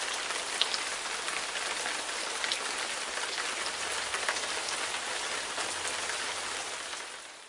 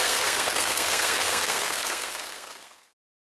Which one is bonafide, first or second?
first